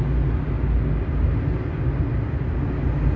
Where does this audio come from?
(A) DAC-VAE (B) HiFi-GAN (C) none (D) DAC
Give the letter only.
C